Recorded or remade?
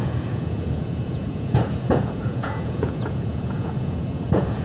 remade